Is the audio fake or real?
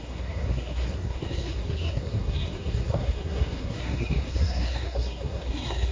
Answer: fake